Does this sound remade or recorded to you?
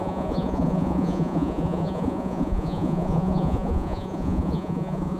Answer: remade